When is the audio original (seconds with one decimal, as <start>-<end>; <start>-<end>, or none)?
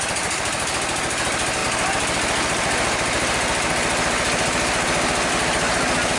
0.0-6.2